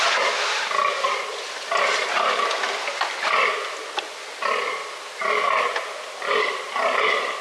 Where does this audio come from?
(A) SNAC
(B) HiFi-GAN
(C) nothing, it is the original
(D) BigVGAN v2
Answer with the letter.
C